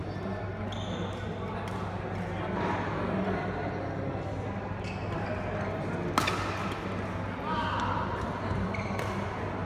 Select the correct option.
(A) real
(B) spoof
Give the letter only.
A